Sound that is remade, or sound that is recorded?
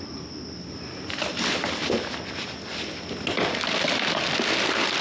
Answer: recorded